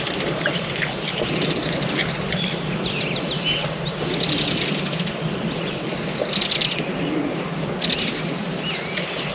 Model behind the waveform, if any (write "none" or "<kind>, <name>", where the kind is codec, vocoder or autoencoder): none